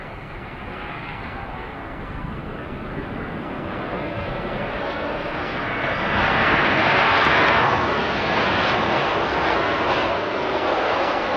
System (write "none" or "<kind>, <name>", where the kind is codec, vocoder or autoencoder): codec, SNAC